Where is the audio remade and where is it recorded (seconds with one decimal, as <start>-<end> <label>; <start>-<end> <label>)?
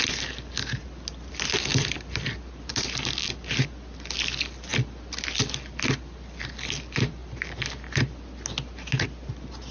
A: 0.0-9.7 recorded